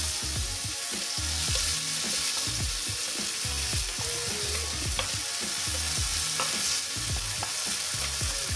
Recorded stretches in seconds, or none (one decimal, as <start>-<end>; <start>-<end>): 0.0-8.6